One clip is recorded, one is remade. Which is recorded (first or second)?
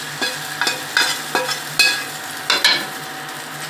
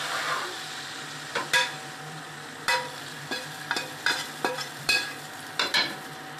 first